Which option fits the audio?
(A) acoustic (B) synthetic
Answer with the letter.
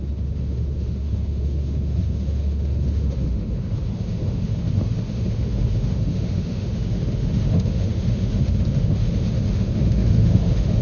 B